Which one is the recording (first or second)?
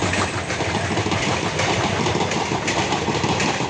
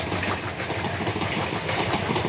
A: second